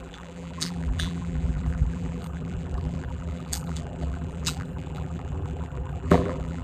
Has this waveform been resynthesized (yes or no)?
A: yes